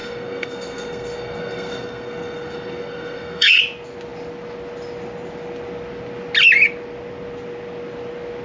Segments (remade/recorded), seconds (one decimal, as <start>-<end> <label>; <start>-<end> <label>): 0.0-3.6 remade; 3.6-8.4 recorded